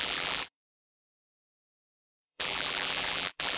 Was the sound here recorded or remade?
remade